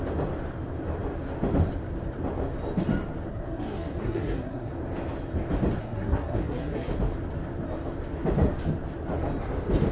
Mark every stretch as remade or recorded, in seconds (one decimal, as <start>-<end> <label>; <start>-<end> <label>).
0.0-3.3 recorded; 3.3-4.7 remade; 4.7-5.8 recorded; 5.8-6.9 remade; 6.9-9.9 recorded